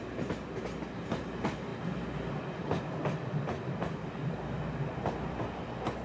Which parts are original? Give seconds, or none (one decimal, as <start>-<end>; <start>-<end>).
0.0-6.0